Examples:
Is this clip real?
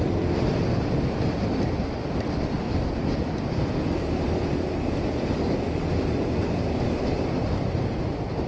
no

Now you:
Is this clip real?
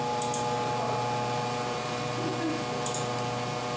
yes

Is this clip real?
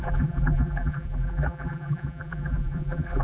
no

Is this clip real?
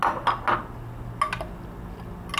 yes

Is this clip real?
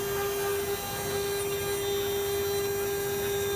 yes